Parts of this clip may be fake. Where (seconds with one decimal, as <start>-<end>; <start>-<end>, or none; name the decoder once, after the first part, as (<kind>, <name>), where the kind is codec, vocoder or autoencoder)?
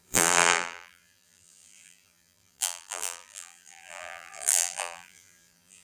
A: 0.0-5.8 (vocoder, BigVGAN v2)